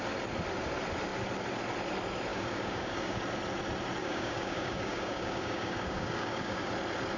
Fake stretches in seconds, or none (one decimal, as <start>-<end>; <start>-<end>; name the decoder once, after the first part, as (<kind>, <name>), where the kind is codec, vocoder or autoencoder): 2.3-3.2 (codec, DAC); 4.0-6.7